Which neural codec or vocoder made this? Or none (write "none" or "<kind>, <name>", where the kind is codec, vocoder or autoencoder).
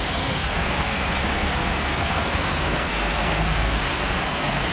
codec, SNAC